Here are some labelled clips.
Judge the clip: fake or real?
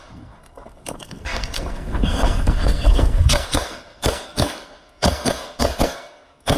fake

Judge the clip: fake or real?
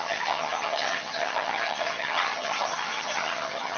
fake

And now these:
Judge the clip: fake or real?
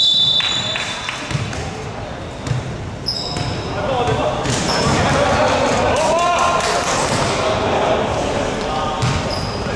real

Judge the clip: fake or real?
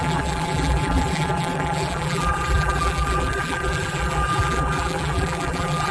fake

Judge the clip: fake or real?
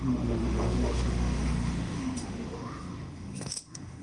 fake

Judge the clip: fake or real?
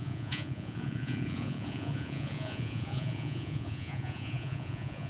fake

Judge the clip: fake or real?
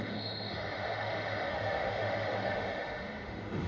fake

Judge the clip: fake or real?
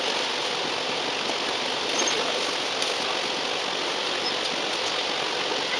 real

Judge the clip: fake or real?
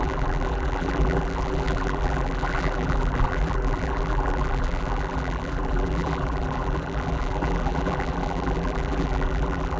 fake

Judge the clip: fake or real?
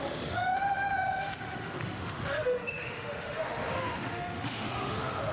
fake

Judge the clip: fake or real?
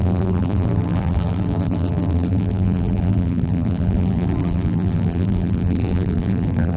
fake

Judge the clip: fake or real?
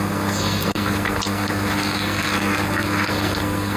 fake